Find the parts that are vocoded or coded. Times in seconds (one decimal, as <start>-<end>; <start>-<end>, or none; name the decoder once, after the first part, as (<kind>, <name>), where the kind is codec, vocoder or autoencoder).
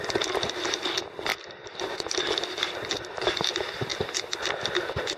none